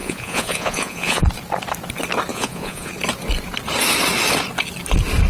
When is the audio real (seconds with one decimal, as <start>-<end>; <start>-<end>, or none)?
1.2-2.3; 2.9-5.3